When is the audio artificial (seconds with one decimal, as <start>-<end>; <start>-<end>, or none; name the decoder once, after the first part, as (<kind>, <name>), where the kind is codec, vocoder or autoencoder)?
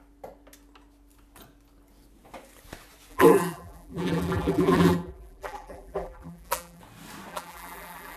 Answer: 3.1-6.8 (vocoder, BigVGAN v2); 7.3-8.2